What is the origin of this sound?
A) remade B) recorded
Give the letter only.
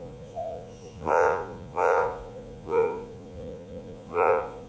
A